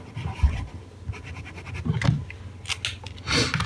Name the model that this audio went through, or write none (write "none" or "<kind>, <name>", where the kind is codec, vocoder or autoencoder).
none